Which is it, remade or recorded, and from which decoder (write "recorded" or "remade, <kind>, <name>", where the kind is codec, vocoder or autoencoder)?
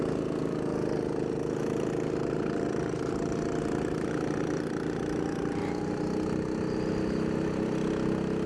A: recorded